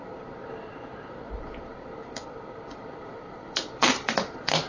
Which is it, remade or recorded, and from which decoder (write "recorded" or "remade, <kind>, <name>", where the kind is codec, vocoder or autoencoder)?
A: remade, vocoder, BigVGAN v2